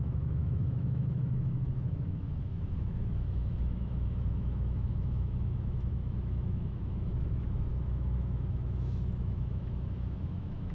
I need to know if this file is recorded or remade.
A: remade